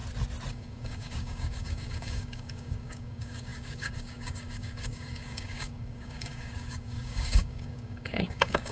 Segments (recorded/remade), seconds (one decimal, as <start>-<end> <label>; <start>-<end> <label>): 0.0-0.5 recorded; 0.5-8.7 remade